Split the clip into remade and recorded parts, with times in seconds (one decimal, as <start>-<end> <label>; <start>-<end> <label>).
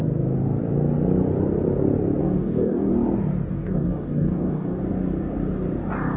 0.0-2.2 recorded; 2.2-2.9 remade; 2.9-3.5 recorded; 3.5-4.8 remade; 4.8-6.2 recorded